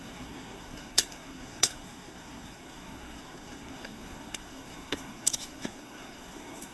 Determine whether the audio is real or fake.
fake